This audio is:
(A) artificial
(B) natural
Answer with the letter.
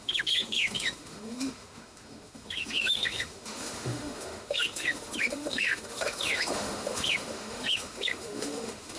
A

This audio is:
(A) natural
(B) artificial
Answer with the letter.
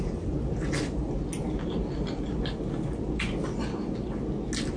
A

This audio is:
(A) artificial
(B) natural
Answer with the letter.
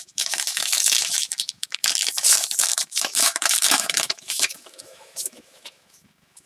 A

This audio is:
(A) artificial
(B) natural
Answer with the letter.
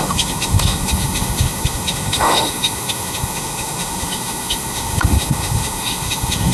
A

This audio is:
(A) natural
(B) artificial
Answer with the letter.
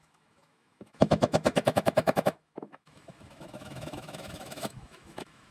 B